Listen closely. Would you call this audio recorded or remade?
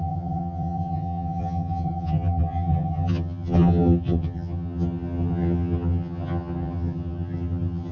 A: remade